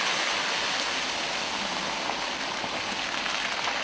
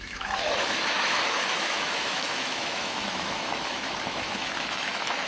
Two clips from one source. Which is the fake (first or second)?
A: second